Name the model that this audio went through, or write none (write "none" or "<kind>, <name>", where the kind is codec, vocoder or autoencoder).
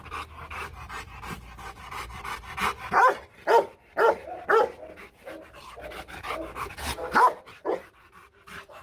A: none